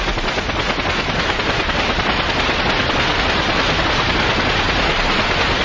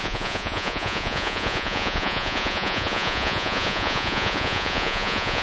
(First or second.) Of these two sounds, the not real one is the second